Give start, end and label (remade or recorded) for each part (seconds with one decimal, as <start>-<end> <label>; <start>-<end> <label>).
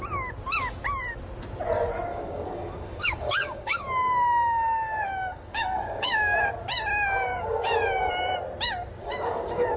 0.0-2.1 recorded; 2.1-6.5 remade; 6.5-7.3 recorded; 7.3-8.1 remade; 8.1-9.0 recorded; 9.0-9.8 remade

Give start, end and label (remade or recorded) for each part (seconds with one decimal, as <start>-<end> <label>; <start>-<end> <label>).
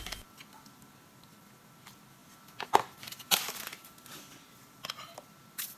0.0-5.8 recorded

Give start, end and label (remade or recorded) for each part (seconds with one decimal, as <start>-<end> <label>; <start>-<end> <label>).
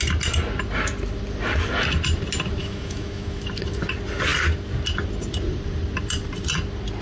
0.0-2.6 recorded; 2.6-3.4 remade; 3.4-7.0 recorded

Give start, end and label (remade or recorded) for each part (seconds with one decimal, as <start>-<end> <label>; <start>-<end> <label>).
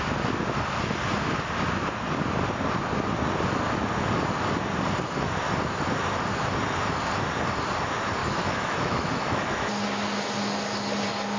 0.0-8.2 recorded; 8.2-9.7 remade; 9.7-11.4 recorded